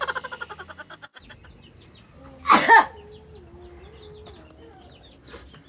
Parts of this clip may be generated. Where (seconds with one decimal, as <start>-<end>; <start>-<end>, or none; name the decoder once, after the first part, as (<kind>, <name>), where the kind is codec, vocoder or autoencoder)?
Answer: none